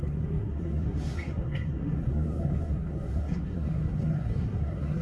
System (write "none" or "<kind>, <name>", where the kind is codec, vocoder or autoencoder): codec, SNAC